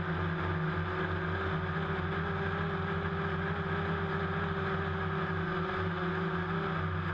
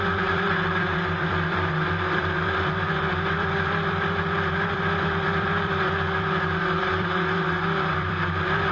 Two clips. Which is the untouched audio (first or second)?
first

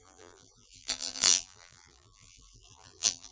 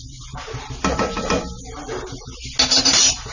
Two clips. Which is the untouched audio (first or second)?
second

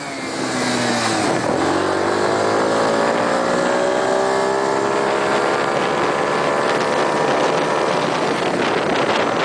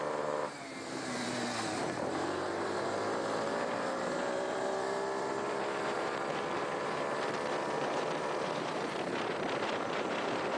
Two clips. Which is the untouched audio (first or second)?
first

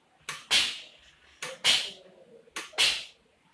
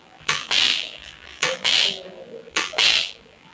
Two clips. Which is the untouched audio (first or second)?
first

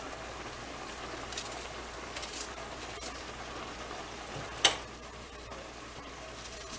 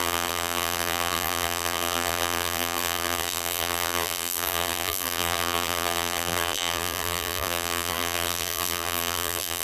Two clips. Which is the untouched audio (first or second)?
first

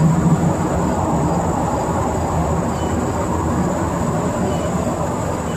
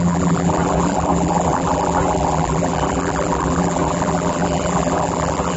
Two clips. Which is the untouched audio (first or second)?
first